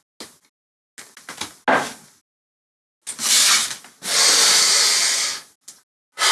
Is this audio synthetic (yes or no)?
no